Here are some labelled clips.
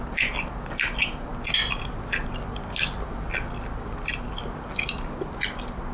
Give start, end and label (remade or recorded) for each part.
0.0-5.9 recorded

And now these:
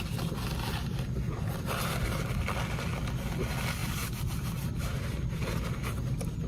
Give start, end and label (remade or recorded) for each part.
0.0-0.9 recorded; 0.9-1.5 remade; 1.5-3.8 recorded; 3.8-5.4 remade; 5.4-6.5 recorded

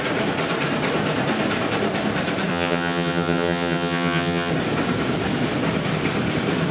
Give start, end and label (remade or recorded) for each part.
0.0-2.5 recorded; 2.5-4.5 remade; 4.5-6.7 recorded

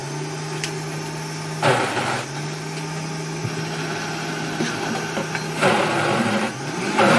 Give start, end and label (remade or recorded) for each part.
0.0-7.2 recorded

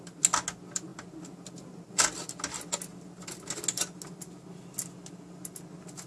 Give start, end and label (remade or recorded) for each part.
0.0-6.1 recorded